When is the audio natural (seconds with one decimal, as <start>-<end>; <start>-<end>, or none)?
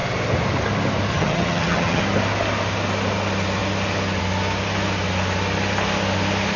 0.0-1.1; 2.0-6.6